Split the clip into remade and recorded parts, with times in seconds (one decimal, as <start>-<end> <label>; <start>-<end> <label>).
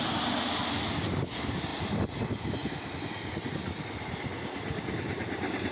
0.0-5.7 recorded